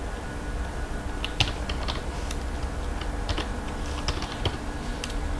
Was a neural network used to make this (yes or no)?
no